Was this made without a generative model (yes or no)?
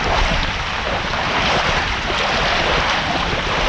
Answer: yes